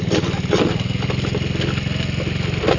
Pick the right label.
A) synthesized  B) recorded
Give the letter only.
B